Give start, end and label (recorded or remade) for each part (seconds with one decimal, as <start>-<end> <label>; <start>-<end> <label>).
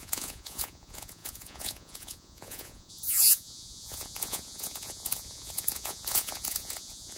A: 0.0-7.2 remade